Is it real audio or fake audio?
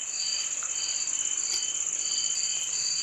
real